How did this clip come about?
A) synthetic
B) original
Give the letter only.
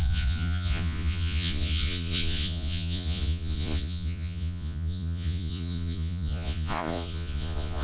A